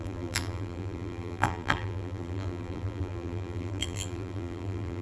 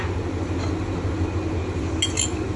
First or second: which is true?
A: second